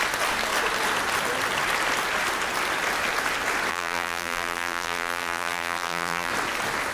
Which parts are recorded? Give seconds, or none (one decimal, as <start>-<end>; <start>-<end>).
0.0-3.7; 6.3-6.9